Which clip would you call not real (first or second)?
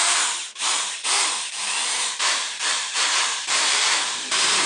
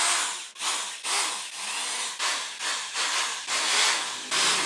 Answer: first